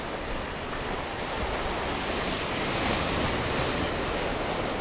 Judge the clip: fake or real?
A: real